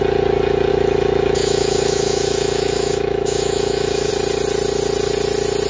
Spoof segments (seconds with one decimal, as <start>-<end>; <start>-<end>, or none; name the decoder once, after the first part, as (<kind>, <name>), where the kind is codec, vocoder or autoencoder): 0.7-4.1 (autoencoder, DAC-VAE)